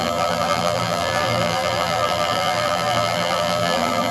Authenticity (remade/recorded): remade